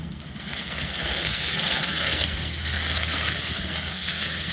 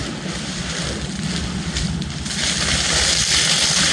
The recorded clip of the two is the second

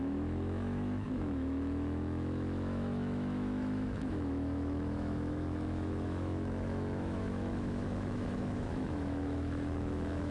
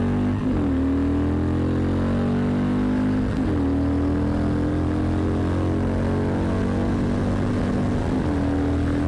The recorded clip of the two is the second